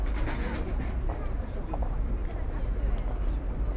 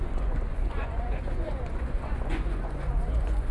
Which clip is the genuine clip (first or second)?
first